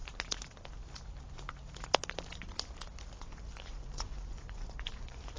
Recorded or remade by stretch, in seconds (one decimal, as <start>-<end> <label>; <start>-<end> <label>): 0.0-3.2 recorded; 3.2-5.4 remade